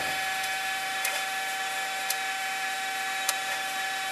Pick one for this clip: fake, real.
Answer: fake